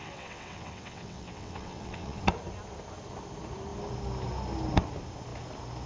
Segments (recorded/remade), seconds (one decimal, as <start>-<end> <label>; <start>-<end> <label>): 0.0-2.2 remade; 2.2-5.9 recorded

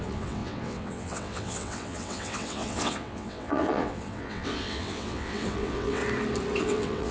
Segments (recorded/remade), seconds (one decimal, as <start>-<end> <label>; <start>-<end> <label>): 0.0-6.0 remade; 6.0-6.6 recorded; 6.6-7.1 remade

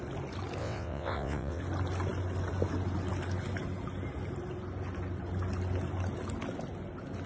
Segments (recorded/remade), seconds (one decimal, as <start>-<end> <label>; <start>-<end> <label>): 0.0-0.6 recorded; 0.6-1.6 remade; 1.6-7.3 recorded

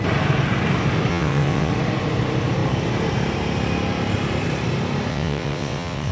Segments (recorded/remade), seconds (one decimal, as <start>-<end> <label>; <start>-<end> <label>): 0.0-1.1 recorded; 1.1-1.7 remade; 1.7-5.1 recorded; 5.1-6.1 remade

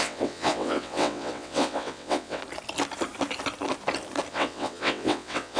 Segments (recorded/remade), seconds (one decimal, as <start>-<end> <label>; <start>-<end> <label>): 0.0-2.4 remade; 2.4-4.3 recorded; 4.3-5.6 remade

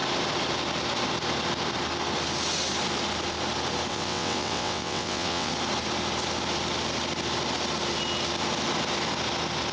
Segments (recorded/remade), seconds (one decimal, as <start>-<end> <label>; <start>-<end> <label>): 0.0-3.9 recorded; 3.9-5.5 remade; 5.5-9.7 recorded